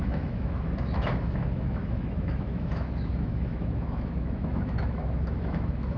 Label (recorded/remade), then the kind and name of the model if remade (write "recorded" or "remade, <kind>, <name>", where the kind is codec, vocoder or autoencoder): remade, autoencoder, DAC-VAE